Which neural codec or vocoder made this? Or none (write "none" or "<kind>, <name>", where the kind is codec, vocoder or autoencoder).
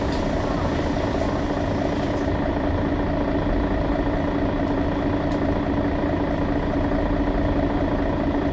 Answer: none